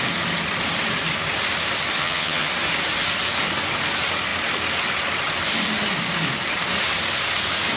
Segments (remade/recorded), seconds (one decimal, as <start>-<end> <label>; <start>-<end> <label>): 0.0-2.0 recorded; 2.0-2.5 remade; 2.5-7.8 recorded